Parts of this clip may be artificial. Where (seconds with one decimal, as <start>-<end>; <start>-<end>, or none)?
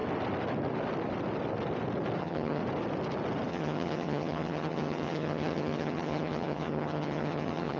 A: 2.2-2.6; 3.5-7.8